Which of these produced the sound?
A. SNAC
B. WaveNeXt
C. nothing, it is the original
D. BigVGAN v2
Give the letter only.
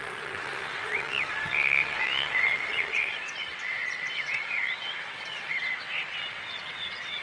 B